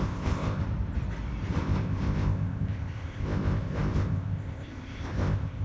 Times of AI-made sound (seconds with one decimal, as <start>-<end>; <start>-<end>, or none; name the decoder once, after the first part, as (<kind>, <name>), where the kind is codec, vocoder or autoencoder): 0.0-0.6 (codec, ZipCodec); 1.6-5.6